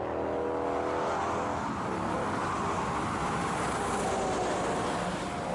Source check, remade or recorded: recorded